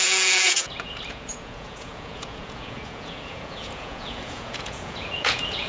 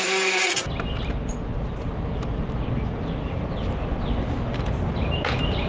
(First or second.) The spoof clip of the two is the first